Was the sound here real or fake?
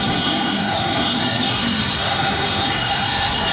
fake